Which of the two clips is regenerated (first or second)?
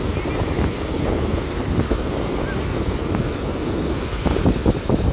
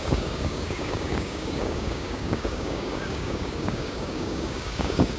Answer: second